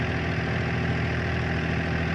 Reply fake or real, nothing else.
real